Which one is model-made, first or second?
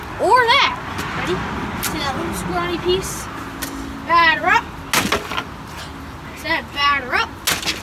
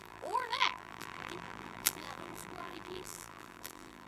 second